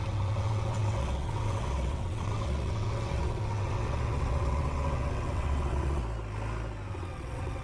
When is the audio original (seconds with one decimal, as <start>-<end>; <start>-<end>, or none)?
6.0-6.9

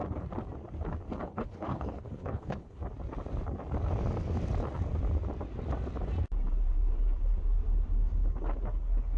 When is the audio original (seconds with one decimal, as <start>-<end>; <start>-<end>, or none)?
0.0-1.2; 2.8-9.2